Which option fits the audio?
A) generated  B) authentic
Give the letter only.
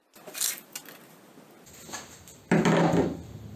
B